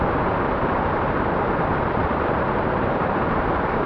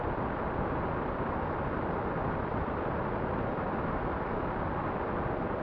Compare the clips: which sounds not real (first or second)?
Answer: first